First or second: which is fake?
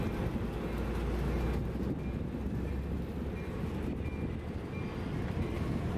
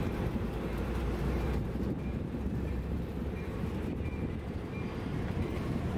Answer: second